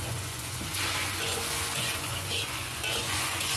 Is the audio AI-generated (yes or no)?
yes